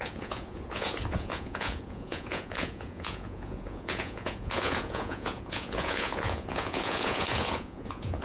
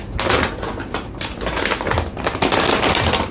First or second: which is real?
second